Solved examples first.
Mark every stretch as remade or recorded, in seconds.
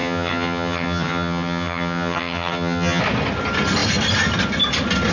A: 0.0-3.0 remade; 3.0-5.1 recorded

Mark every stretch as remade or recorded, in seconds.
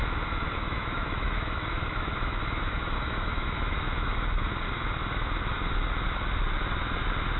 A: 0.0-4.4 remade; 4.4-7.4 recorded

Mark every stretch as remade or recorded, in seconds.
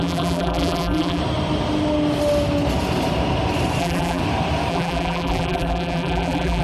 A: 0.0-1.2 remade; 1.2-3.8 recorded; 3.8-4.2 remade; 4.2-4.7 recorded; 4.7-6.6 remade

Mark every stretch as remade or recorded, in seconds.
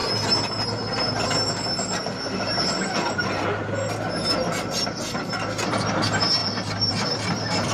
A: 0.0-7.7 recorded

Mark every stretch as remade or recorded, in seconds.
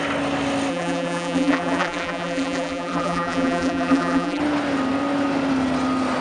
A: 0.0-0.7 recorded; 0.7-4.4 remade; 4.4-6.2 recorded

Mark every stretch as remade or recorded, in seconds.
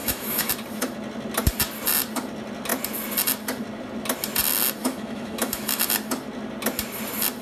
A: 0.0-0.5 remade; 0.5-4.8 recorded; 4.8-5.8 remade; 5.8-7.4 recorded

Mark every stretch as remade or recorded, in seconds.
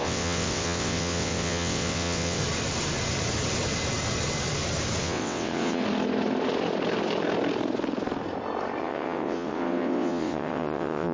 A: 0.0-2.4 remade; 2.4-5.0 recorded; 5.0-5.8 remade; 5.8-8.8 recorded; 8.8-11.1 remade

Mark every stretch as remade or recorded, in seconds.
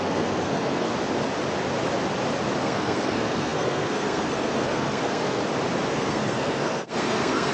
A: 0.0-0.9 remade; 0.9-2.6 recorded; 2.6-5.4 remade; 5.4-5.9 recorded; 5.9-7.5 remade